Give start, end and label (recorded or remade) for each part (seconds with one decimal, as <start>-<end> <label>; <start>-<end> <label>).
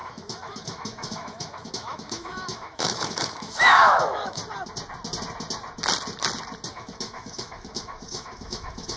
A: 0.0-4.4 remade; 4.4-6.7 recorded; 6.7-9.0 remade